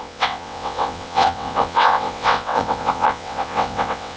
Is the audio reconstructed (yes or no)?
yes